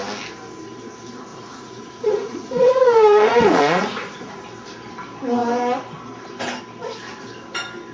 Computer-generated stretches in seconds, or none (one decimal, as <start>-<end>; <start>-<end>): 1.3-4.4

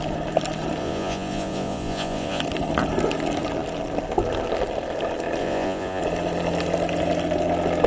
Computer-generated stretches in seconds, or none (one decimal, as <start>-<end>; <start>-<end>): 0.8-2.4; 5.4-6.0

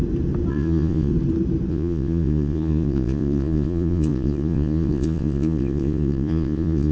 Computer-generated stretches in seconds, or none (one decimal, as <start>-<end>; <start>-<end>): 0.5-1.1; 1.7-6.9

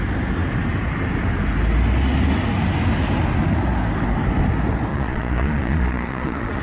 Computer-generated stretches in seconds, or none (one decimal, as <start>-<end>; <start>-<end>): 4.9-6.6

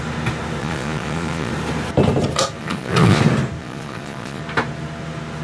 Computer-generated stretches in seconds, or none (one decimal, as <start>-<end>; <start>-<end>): 0.6-1.5; 2.6-3.2; 3.6-4.4

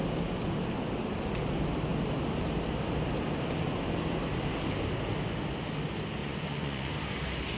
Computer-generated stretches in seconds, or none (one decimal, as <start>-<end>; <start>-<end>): 6.2-6.9